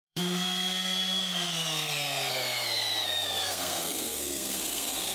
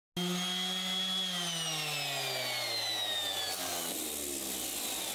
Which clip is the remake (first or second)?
first